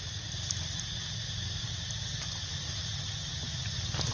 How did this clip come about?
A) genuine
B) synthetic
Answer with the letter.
A